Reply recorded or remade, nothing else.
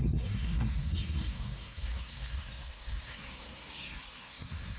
remade